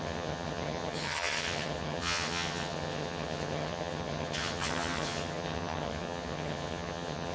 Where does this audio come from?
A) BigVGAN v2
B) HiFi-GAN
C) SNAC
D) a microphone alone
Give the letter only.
B